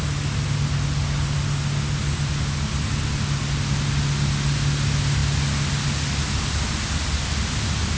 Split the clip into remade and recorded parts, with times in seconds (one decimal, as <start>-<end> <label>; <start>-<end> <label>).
0.0-8.0 recorded